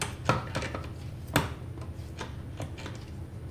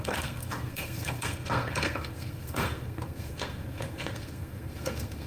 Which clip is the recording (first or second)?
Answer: first